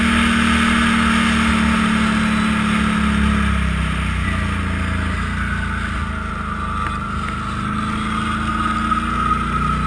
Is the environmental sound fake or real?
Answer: real